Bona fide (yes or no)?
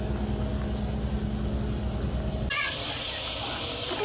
yes